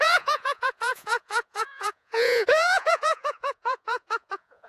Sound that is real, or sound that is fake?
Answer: fake